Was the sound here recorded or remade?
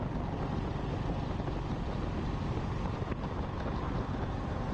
recorded